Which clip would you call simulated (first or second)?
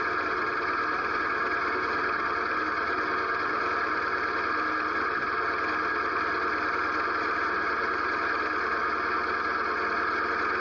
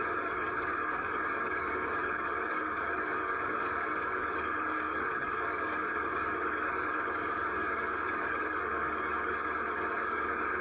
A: second